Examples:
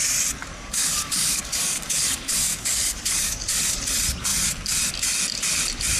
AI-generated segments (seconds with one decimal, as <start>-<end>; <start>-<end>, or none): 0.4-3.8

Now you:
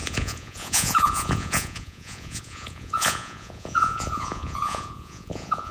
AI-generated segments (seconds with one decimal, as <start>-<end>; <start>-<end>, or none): 0.0-5.7

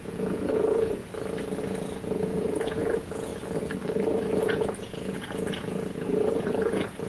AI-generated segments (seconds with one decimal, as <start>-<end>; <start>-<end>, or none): 0.0-1.0; 1.6-3.3; 4.4-7.1